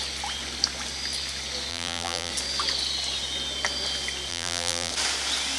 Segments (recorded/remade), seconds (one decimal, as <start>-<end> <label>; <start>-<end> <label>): 0.0-1.7 recorded; 1.7-2.3 remade; 2.3-4.3 recorded; 4.3-4.9 remade; 4.9-5.6 recorded